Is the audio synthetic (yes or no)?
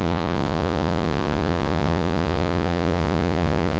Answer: yes